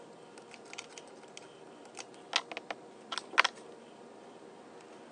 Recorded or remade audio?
recorded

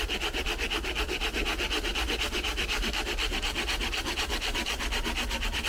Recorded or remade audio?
recorded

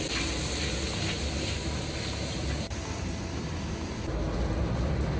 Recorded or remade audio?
recorded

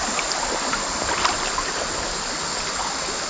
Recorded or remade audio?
recorded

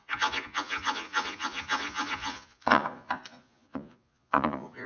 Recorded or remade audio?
remade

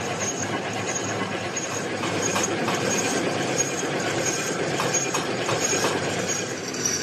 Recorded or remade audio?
remade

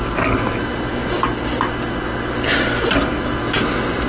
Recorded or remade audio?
recorded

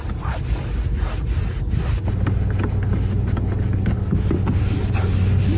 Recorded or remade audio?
recorded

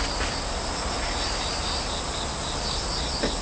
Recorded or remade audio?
recorded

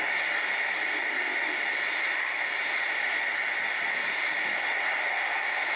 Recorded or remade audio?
recorded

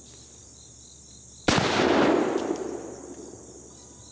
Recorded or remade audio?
recorded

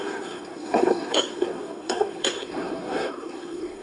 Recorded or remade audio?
remade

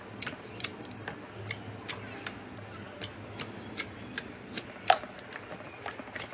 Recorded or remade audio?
recorded